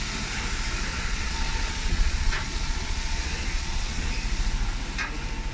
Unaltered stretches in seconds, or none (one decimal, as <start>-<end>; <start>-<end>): 0.0-0.9; 4.1-5.5